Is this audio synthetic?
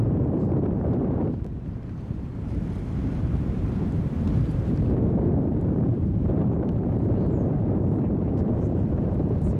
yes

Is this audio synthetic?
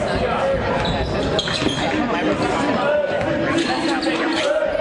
no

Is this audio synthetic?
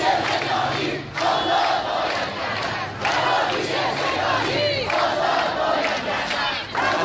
no